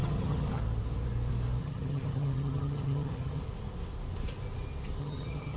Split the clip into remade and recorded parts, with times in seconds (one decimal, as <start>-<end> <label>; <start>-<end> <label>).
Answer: 0.0-0.6 remade; 0.6-1.6 recorded; 1.6-3.4 remade; 3.4-5.0 recorded; 5.0-5.6 remade